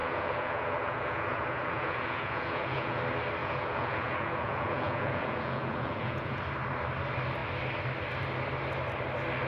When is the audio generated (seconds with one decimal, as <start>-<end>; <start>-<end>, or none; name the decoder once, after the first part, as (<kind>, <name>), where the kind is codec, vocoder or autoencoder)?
0.0-3.0 (vocoder, Vocos); 3.4-6.4